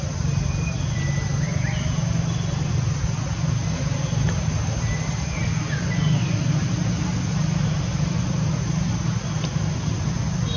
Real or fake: real